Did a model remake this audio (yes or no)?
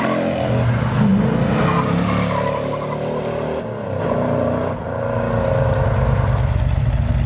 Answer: no